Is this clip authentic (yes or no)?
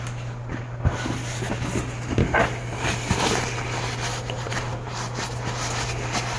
yes